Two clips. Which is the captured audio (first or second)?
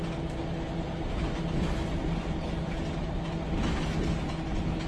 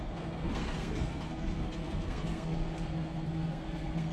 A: first